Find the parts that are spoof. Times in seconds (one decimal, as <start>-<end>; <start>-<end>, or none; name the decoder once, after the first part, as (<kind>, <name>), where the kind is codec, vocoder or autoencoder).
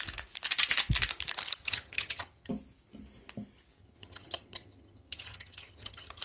1.6-2.5 (vocoder, HiFi-GAN); 3.8-6.2